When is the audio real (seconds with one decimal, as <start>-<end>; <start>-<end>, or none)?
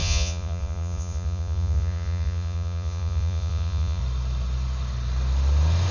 4.0-5.9